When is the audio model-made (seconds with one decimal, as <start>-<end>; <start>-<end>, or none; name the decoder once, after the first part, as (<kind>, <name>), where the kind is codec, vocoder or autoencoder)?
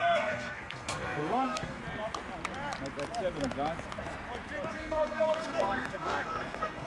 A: 0.0-1.8 (codec, SNAC); 4.7-6.9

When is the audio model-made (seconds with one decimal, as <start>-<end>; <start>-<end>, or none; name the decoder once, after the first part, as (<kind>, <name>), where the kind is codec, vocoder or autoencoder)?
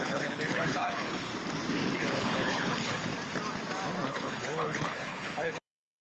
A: 0.0-1.3 (codec, HILCodec); 2.0-3.1; 4.1-6.0